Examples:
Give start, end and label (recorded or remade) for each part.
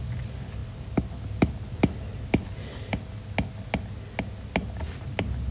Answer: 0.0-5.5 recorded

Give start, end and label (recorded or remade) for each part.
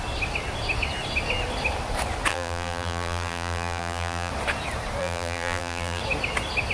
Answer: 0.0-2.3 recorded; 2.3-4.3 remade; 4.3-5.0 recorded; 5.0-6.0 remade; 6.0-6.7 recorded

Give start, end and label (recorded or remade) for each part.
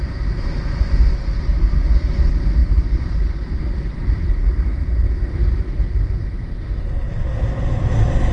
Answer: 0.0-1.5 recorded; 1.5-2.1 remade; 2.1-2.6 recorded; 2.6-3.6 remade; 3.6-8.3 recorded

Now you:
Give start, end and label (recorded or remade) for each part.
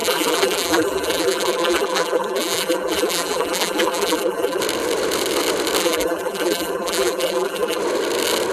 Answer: 0.0-4.6 remade; 4.6-5.8 recorded; 5.8-7.8 remade; 7.8-8.5 recorded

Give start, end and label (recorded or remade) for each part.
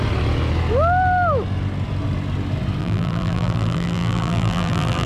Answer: 0.0-2.8 recorded; 2.8-5.1 remade